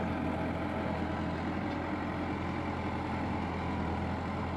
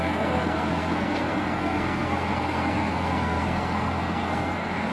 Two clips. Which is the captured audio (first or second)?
first